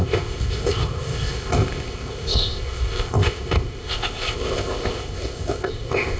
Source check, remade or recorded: remade